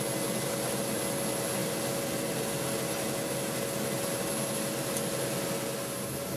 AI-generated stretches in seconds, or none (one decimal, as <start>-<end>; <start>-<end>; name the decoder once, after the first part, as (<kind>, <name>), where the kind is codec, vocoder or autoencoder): none